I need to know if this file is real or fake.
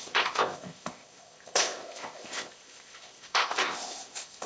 fake